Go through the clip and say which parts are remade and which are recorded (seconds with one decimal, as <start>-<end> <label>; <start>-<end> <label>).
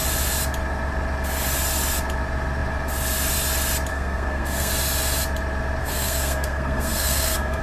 0.0-3.9 recorded; 3.9-4.7 remade; 4.7-5.8 recorded; 5.8-7.6 remade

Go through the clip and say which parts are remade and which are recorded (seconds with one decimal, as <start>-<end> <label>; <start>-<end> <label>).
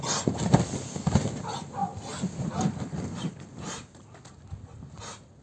0.0-5.4 recorded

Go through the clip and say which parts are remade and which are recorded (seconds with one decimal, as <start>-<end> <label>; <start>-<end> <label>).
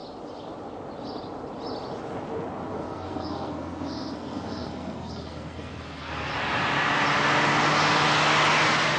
0.0-2.7 recorded; 2.7-6.3 remade; 6.3-9.0 recorded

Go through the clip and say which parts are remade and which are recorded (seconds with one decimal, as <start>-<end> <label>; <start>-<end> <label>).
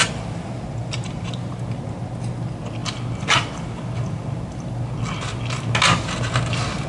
0.0-6.9 recorded